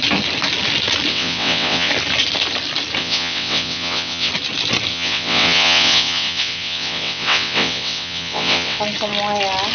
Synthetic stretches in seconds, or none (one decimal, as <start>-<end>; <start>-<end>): 1.1-1.9; 3.0-4.3; 4.9-8.8